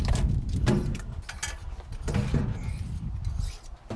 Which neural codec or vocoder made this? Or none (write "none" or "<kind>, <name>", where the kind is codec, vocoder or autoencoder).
none